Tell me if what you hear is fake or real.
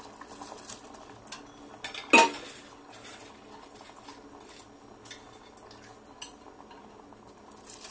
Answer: real